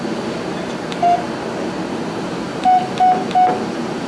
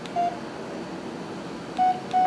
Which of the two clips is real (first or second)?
second